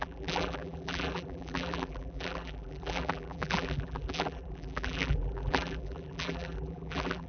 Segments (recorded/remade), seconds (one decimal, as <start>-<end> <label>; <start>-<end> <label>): 0.0-7.3 remade